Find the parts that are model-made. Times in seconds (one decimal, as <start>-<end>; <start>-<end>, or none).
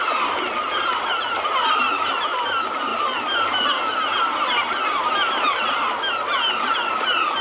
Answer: none